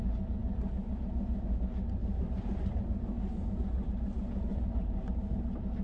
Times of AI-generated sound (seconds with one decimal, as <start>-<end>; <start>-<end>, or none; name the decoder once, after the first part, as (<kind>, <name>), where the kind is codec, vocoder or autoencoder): 0.4-1.0 (vocoder, BigVGAN v2); 2.0-3.6; 4.5-5.1